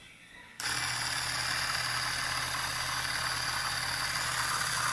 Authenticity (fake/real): real